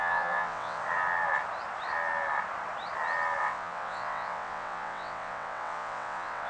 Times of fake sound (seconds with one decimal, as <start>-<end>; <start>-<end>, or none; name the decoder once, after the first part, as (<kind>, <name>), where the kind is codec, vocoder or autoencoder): 0.0-0.8 (vocoder, WaveNeXt); 3.4-6.5